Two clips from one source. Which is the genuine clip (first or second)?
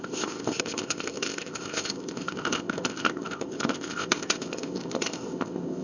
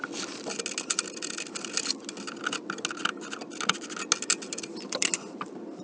second